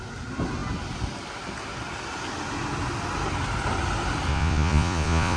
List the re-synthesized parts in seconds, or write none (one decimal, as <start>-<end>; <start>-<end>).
4.3-5.4